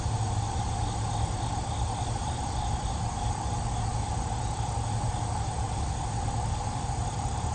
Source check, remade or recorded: recorded